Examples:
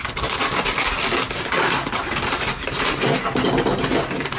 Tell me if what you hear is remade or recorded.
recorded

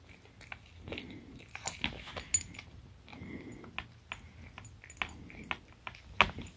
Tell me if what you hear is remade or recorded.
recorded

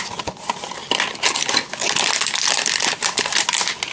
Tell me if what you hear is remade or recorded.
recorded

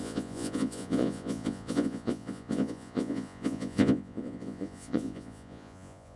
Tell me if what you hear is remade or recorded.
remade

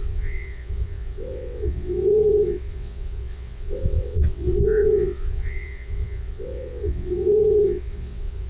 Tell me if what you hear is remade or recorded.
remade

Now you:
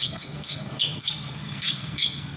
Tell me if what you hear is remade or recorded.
remade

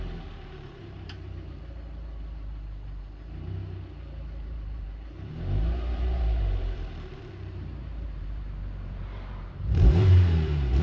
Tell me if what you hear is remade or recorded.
remade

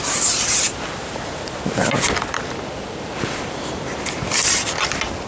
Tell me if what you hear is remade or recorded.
recorded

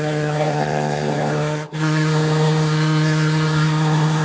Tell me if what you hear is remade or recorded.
remade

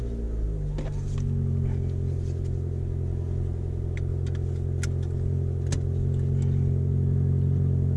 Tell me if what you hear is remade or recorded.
recorded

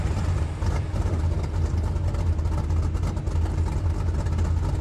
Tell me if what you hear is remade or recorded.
recorded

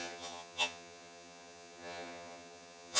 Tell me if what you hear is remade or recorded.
remade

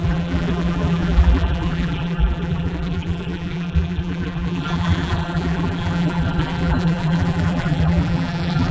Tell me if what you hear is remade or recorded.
remade